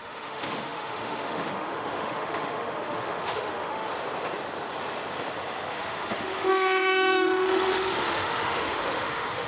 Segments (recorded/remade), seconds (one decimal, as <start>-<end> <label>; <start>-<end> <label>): 0.0-3.9 remade; 3.9-5.7 recorded; 5.7-9.5 remade